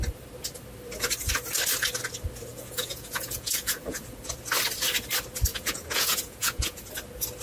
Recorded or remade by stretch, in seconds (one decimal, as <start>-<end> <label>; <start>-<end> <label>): 0.0-2.5 recorded; 2.5-4.2 remade; 4.2-5.5 recorded; 5.5-6.9 remade; 6.9-7.4 recorded

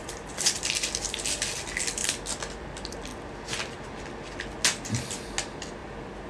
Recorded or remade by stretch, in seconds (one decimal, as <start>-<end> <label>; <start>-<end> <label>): 0.0-6.3 recorded